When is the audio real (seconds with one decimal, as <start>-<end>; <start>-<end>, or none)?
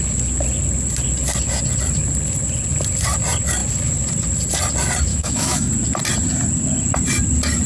0.0-5.1; 5.7-7.7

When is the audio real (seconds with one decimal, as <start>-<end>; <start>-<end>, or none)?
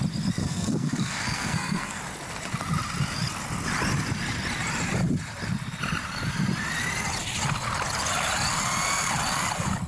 0.0-0.4; 2.0-9.9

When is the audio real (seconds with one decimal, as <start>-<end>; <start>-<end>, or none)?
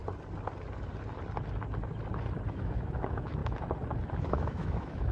0.0-2.5; 3.4-4.1